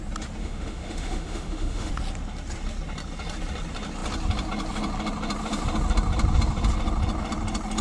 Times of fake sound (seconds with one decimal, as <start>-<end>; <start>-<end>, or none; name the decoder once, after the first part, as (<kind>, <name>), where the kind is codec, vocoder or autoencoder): 0.4-1.9 (autoencoder, DAC-VAE)